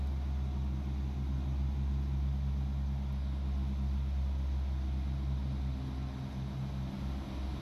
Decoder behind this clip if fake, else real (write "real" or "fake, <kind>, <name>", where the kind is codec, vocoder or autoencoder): real